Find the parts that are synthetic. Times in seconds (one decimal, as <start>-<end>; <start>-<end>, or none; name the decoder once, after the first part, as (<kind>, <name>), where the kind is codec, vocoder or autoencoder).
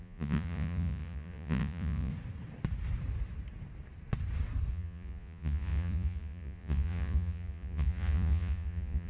0.0-2.1 (vocoder, Vocos); 4.7-9.1